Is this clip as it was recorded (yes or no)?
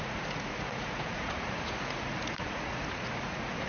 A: no